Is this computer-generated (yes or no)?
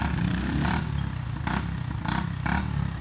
no